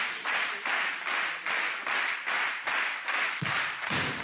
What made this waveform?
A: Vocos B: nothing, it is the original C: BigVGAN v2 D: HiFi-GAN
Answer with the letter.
B